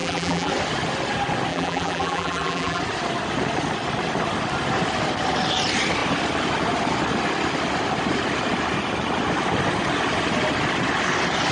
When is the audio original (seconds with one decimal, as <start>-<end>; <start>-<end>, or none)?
0.5-1.5; 2.8-11.5